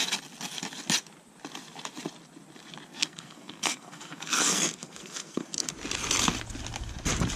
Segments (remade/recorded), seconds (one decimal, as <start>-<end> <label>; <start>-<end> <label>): 0.0-2.9 recorded; 2.9-5.7 remade; 5.7-7.4 recorded